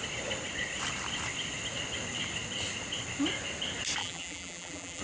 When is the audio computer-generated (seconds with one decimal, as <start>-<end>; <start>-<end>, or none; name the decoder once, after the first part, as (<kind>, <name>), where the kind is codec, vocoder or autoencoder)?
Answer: 4.0-5.0 (vocoder, BigVGAN v2)